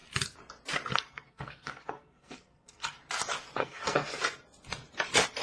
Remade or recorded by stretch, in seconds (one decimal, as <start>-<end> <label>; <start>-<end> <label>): 0.0-0.9 recorded; 0.9-3.0 remade; 3.0-3.6 recorded; 3.6-4.2 remade; 4.2-5.4 recorded